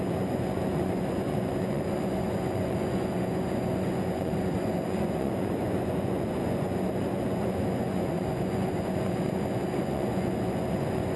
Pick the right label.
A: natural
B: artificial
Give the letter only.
B